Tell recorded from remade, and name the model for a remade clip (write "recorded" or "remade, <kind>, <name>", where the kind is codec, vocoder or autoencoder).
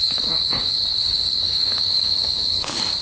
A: remade, codec, DAC